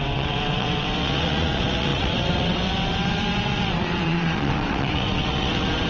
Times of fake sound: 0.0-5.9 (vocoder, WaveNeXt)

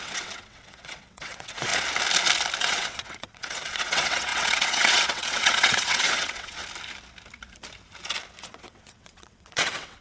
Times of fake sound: 0.0-1.7 (vocoder, WaveNeXt); 2.6-6.6; 8.4-10.0

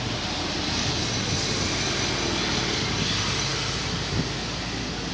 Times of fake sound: none

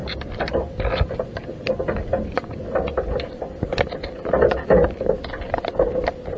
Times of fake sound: none

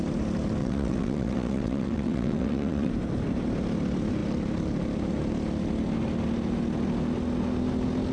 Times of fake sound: 0.6-2.9 (vocoder, WaveNeXt)

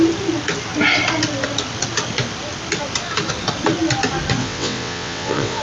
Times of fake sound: 4.4-5.6 (vocoder, WaveNeXt)